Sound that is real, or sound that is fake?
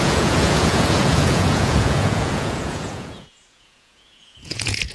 fake